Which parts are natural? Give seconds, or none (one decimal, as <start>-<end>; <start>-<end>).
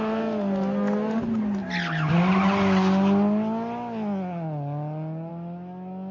0.0-6.1